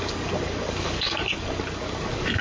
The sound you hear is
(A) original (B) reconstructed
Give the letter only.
B